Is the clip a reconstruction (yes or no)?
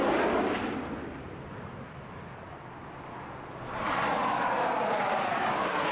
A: no